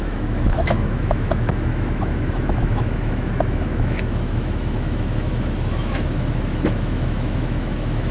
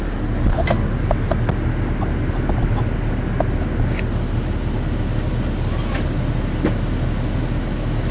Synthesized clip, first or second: first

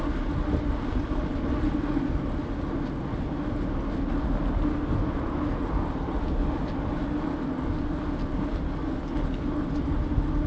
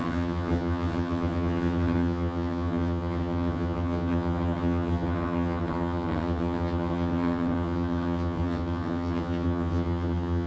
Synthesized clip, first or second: second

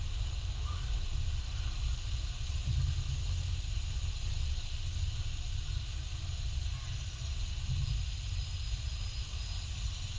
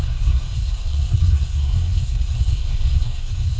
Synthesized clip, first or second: second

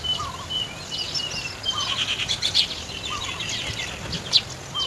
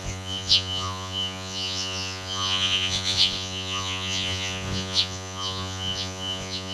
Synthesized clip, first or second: second